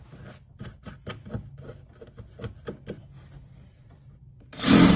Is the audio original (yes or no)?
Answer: yes